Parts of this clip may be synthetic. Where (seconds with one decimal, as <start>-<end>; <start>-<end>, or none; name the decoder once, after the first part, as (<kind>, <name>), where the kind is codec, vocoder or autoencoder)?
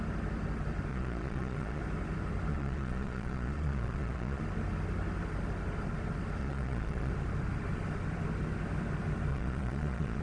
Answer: 0.9-1.8 (vocoder, Vocos); 2.5-4.4; 6.4-7.1; 9.3-10.2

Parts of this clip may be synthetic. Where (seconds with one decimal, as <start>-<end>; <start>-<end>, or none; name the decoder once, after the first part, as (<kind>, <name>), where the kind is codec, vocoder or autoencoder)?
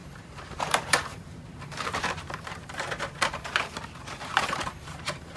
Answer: 0.0-5.4 (vocoder, BigVGAN v2)